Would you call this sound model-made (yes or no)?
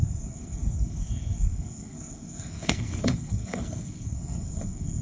yes